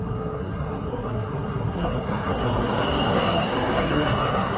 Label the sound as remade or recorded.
remade